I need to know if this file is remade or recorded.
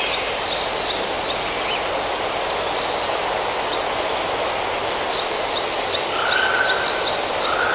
recorded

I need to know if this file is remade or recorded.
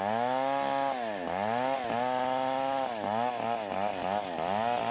recorded